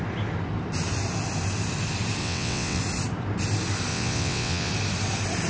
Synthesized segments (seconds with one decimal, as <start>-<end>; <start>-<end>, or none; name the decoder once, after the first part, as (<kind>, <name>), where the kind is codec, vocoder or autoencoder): 2.2-2.8 (vocoder, WaveNeXt); 3.9-4.7